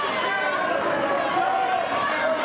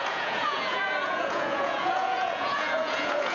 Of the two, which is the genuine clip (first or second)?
first